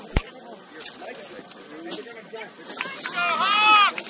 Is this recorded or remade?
recorded